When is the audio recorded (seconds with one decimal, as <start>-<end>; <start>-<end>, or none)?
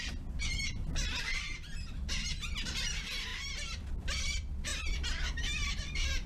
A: 4.7-5.3